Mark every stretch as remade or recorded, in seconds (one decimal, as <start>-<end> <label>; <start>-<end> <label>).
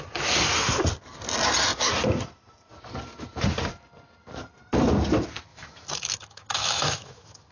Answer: 0.0-5.5 recorded; 5.5-7.5 remade